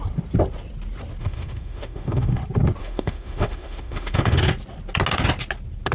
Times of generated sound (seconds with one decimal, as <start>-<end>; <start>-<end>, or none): 1.2-2.4; 2.8-4.4